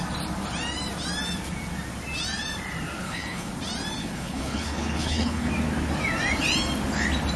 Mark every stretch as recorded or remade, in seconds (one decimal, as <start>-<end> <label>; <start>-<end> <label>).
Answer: 0.0-3.0 recorded; 3.0-3.5 remade; 3.5-4.0 recorded; 4.0-5.5 remade; 5.5-7.4 recorded

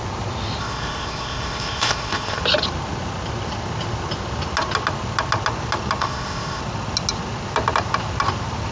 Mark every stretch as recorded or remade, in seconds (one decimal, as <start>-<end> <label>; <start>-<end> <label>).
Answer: 0.0-0.6 recorded; 0.6-2.4 remade; 2.4-6.0 recorded; 6.0-6.6 remade; 6.6-8.7 recorded

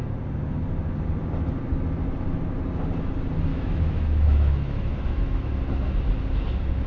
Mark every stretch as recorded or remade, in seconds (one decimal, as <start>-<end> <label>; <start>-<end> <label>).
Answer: 0.0-3.5 recorded; 3.5-5.5 remade; 5.5-6.9 recorded

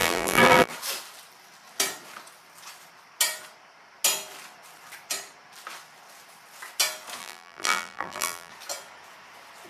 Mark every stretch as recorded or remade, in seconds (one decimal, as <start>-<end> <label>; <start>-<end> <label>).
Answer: 0.0-0.7 remade; 0.7-7.2 recorded; 7.2-8.5 remade; 8.5-9.7 recorded